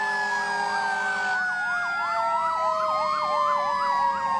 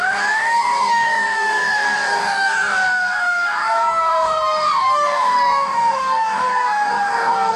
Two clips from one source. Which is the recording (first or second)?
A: first